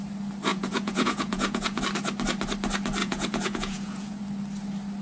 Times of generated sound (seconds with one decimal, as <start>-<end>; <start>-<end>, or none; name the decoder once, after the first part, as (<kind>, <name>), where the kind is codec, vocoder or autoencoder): 0.5-1.8 (vocoder, Vocos); 3.0-4.2